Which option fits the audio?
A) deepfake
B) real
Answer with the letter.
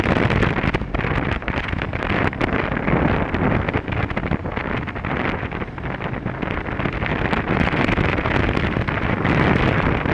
A